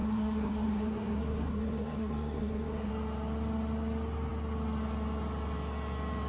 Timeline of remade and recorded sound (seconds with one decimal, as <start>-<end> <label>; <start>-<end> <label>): 0.0-2.9 remade; 2.9-6.3 recorded